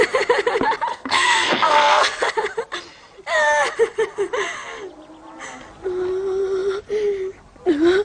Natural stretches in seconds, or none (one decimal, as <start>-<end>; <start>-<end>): 0.0-0.9; 2.3-8.0